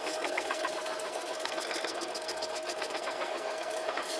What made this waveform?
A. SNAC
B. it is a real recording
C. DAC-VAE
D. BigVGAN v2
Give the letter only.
A